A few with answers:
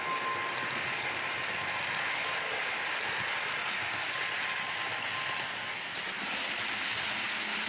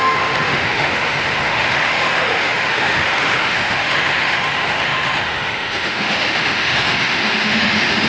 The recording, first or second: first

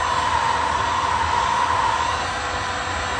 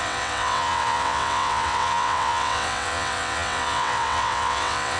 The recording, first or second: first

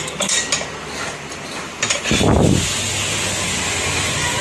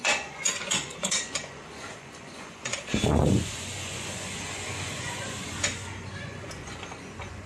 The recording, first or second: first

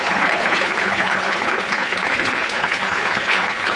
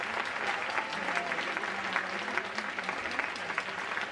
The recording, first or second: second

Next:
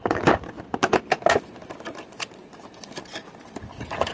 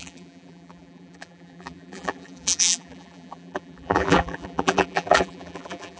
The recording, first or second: first